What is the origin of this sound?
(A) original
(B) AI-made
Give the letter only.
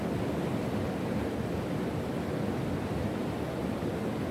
A